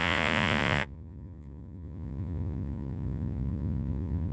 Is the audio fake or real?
fake